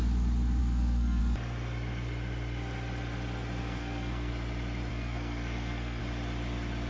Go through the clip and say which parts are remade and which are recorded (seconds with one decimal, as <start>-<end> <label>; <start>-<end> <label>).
0.0-0.6 recorded; 0.6-1.2 remade; 1.2-3.6 recorded; 3.6-4.3 remade; 4.3-4.9 recorded; 4.9-6.0 remade; 6.0-6.9 recorded